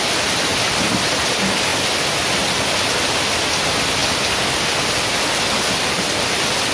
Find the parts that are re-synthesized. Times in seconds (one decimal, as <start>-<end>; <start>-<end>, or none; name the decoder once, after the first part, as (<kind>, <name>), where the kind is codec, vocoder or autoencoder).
none